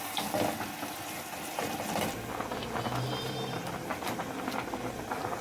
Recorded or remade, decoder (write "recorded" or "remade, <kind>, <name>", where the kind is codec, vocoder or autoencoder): recorded